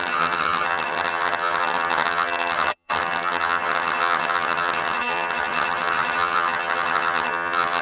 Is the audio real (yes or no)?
no